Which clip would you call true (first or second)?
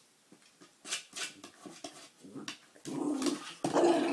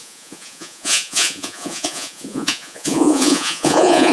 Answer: first